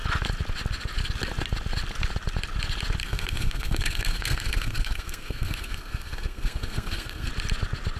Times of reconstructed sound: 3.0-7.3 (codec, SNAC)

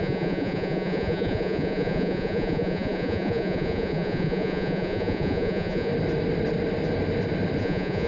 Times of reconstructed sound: 0.0-5.9 (vocoder, Vocos); 7.6-8.1

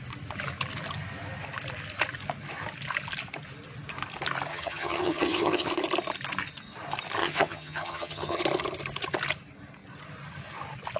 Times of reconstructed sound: 4.5-5.7 (vocoder, HiFi-GAN); 7.2-8.4

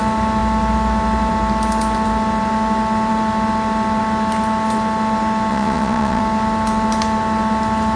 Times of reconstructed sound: 5.5-6.2 (vocoder, Vocos)

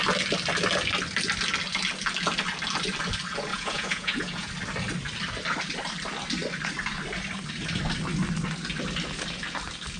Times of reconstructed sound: 3.5-4.5 (vocoder, Vocos)

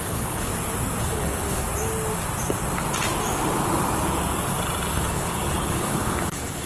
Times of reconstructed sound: 0.0-0.5 (codec, HILCodec); 1.0-1.6; 4.9-6.7

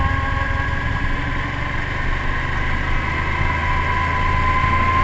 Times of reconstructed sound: none